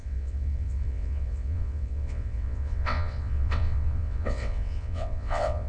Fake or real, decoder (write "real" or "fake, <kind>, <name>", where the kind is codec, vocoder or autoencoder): fake, vocoder, WaveNeXt